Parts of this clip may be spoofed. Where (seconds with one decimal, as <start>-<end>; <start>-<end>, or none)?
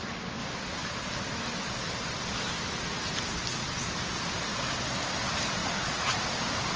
5.6-6.2